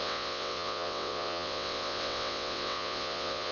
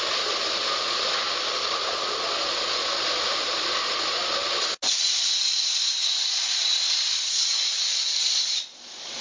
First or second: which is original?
second